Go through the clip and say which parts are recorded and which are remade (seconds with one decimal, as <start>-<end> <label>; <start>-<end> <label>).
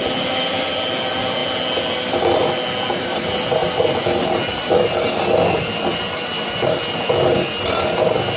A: 0.0-8.4 recorded